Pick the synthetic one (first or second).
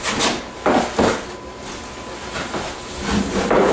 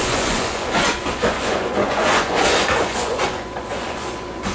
second